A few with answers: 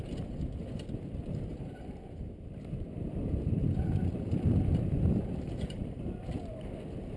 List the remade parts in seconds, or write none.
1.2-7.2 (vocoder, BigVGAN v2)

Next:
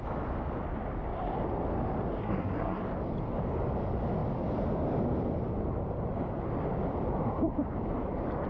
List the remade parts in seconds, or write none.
2.2-2.8 (codec, SNAC)

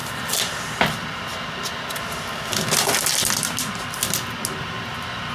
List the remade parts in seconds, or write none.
none